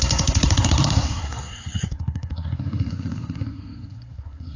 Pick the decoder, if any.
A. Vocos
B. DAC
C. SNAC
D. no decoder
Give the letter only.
C